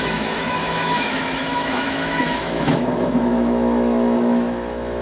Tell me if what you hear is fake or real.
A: fake